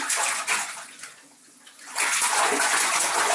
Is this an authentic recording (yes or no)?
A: no